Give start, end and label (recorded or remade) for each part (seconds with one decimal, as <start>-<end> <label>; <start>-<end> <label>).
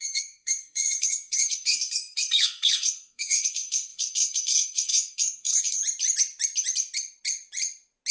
0.0-5.8 remade; 5.8-8.1 recorded